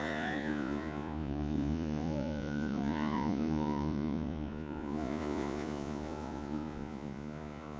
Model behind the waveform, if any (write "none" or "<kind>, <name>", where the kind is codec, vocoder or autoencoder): vocoder, Vocos